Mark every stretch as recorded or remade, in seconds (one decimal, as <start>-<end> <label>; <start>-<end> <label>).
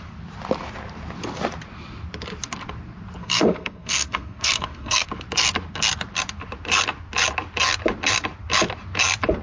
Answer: 0.0-3.2 recorded; 3.2-5.1 remade; 5.1-9.4 recorded